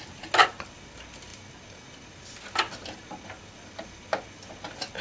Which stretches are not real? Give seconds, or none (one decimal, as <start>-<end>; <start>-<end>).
none